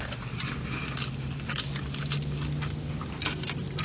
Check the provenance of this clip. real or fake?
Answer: real